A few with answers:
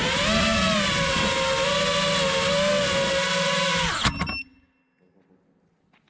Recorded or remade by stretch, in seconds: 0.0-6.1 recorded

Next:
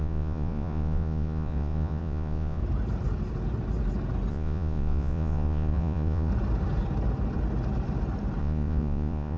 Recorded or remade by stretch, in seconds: 0.0-2.6 remade; 2.6-4.3 recorded; 4.3-6.3 remade; 6.3-8.4 recorded; 8.4-9.4 remade

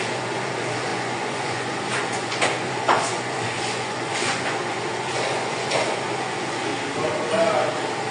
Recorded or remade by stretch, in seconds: 0.0-6.7 remade; 6.7-8.1 recorded

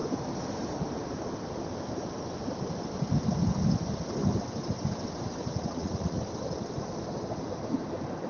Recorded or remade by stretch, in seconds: 0.0-5.5 recorded; 5.5-6.2 remade; 6.2-8.3 recorded

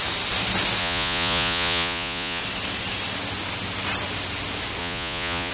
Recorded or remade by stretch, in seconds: 0.0-0.8 recorded; 0.8-2.4 remade; 2.4-4.8 recorded; 4.8-5.5 remade